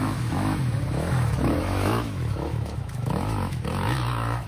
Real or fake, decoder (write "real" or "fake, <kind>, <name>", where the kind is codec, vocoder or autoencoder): fake, autoencoder, DAC-VAE